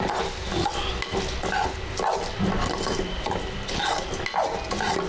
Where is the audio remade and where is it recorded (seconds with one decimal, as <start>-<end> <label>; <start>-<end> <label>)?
0.0-5.1 recorded

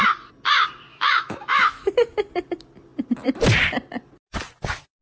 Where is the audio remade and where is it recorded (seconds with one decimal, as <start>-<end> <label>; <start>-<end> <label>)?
0.0-0.9 recorded; 0.9-1.9 remade; 1.9-5.0 recorded

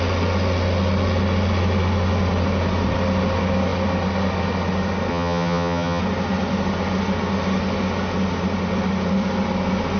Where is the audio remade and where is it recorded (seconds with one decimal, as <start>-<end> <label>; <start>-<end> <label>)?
0.0-5.1 recorded; 5.1-6.0 remade; 6.0-10.0 recorded

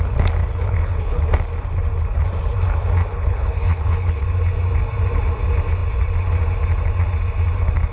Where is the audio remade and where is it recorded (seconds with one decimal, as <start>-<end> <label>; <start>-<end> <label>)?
0.0-0.4 recorded; 0.4-1.2 remade; 1.2-3.1 recorded; 3.1-4.2 remade; 4.2-7.9 recorded

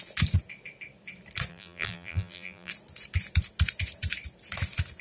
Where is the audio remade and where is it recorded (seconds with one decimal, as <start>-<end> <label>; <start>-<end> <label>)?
0.0-1.5 recorded; 1.5-2.7 remade; 2.7-5.0 recorded